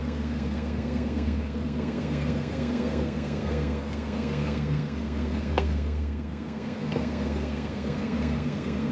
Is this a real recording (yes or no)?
no